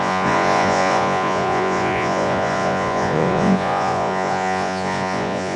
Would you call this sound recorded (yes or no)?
no